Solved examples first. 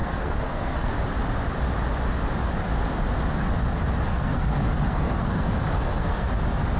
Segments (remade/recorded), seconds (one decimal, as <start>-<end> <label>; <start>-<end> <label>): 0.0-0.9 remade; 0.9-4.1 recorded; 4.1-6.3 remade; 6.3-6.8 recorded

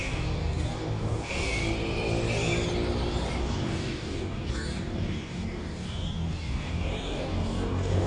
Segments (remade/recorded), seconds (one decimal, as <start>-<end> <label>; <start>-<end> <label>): 0.0-1.6 remade; 1.6-3.4 recorded; 3.4-8.1 remade

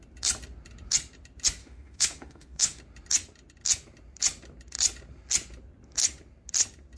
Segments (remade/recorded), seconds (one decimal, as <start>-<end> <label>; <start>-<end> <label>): 0.0-1.6 recorded; 1.6-2.8 remade; 2.8-7.0 recorded

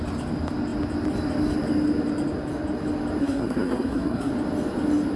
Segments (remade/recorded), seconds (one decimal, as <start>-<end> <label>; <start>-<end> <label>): 0.0-3.2 recorded; 3.2-4.3 remade; 4.3-5.2 recorded

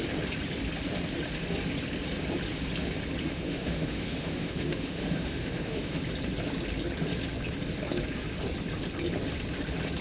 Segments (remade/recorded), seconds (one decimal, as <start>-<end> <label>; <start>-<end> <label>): 0.0-3.2 recorded; 3.2-6.0 remade; 6.0-10.0 recorded

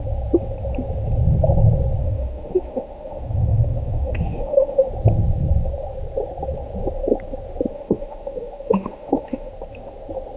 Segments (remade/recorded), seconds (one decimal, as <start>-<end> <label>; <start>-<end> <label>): 0.0-2.0 recorded; 2.0-4.9 remade; 4.9-7.7 recorded; 7.7-9.5 remade; 9.5-10.4 recorded

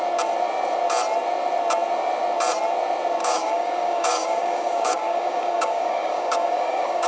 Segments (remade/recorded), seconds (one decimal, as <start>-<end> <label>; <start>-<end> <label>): 0.0-3.2 recorded; 3.2-7.1 remade